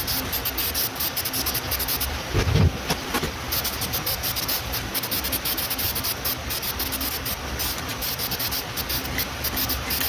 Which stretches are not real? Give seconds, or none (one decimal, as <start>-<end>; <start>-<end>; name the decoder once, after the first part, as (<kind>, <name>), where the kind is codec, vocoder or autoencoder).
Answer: 7.9-8.5 (vocoder, BigVGAN v2)